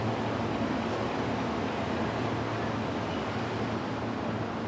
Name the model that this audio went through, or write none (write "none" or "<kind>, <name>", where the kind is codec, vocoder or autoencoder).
none